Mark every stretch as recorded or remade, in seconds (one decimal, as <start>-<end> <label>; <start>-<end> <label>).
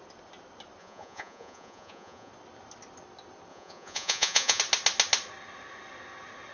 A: 0.0-0.8 recorded; 0.8-2.3 remade; 2.3-3.5 recorded; 3.5-4.6 remade; 4.6-6.5 recorded